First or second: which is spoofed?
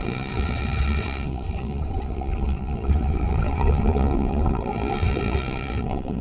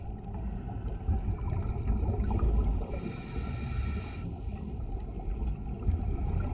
first